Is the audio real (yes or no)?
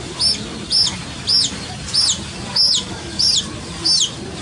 yes